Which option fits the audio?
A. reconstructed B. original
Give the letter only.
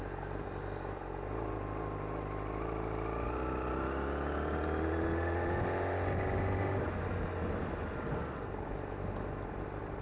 B